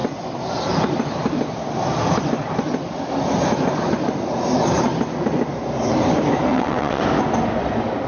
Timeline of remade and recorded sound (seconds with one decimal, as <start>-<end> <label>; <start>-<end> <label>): 0.0-6.5 recorded; 6.5-7.0 remade; 7.0-8.1 recorded